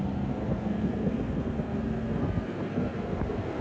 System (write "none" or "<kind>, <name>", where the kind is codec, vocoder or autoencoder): codec, SNAC